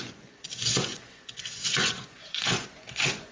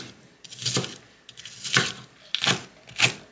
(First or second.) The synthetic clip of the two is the first